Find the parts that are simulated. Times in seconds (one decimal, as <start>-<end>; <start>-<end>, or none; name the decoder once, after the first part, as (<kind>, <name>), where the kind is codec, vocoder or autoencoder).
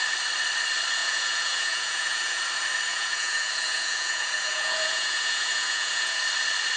1.0-2.4 (vocoder, Vocos); 2.9-6.2